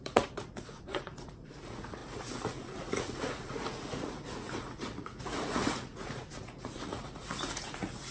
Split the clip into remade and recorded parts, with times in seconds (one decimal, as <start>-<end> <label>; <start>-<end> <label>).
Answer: 0.0-8.1 remade

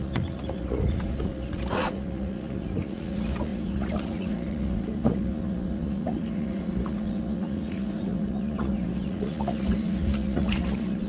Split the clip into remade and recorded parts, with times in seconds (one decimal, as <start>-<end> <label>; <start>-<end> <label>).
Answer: 0.0-11.1 remade

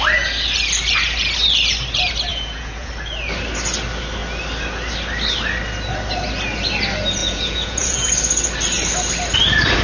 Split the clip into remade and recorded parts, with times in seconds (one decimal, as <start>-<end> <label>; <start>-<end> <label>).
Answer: 0.0-2.3 recorded; 2.3-2.9 remade; 2.9-7.2 recorded; 7.2-8.1 remade; 8.1-9.8 recorded

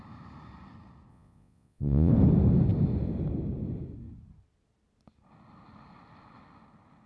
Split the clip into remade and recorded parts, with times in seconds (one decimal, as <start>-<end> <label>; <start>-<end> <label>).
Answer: 0.0-1.1 recorded; 1.1-2.1 remade; 2.1-7.1 recorded

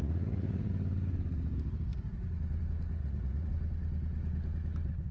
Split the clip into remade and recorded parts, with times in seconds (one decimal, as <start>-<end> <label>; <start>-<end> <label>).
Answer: 0.0-0.7 remade; 0.7-3.0 recorded; 3.0-3.5 remade; 3.5-5.1 recorded

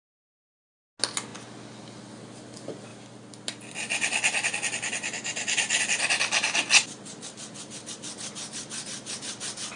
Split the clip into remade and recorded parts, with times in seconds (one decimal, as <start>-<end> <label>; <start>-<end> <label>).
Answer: 0.0-9.8 recorded